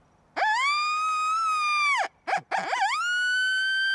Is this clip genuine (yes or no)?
yes